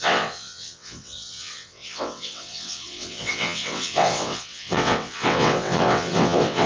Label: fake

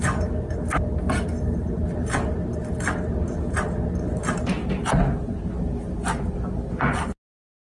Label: real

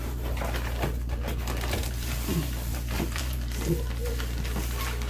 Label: real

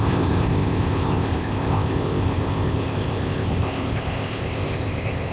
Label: fake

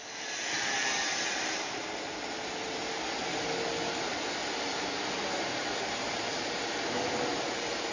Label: real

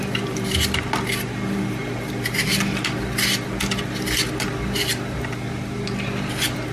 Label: real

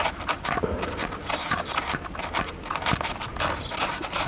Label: real